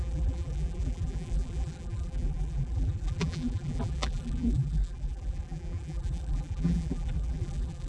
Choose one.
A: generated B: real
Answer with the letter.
A